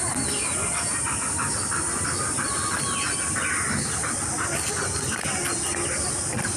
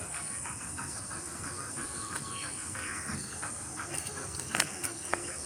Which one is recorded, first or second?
first